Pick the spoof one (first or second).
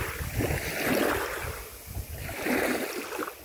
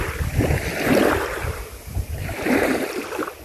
second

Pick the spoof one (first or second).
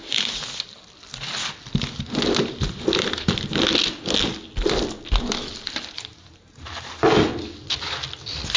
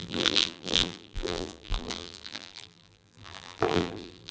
second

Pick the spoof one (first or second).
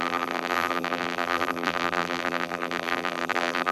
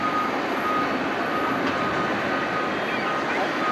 first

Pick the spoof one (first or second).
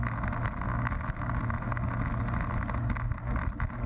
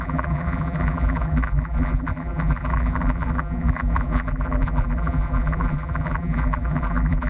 second